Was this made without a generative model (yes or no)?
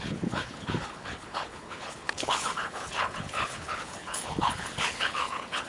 no